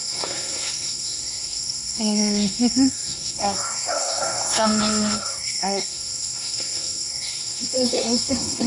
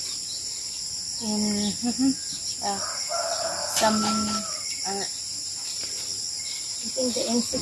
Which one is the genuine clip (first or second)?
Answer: second